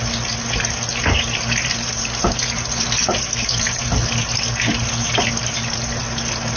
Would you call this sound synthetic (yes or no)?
no